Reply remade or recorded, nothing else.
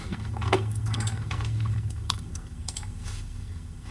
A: remade